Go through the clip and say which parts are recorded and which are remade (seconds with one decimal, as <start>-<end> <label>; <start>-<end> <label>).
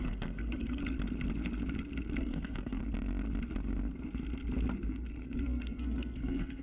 0.0-0.8 remade; 0.8-2.2 recorded; 2.2-2.8 remade; 2.8-5.1 recorded; 5.1-6.6 remade